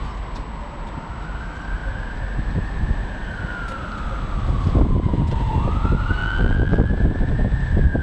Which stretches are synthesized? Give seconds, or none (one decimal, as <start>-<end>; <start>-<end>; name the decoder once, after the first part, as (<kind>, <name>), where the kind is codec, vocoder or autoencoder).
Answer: 6.2-6.9 (vocoder, BigVGAN v2)